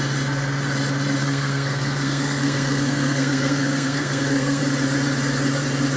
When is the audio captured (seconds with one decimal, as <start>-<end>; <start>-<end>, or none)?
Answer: 0.0-1.2; 4.6-6.0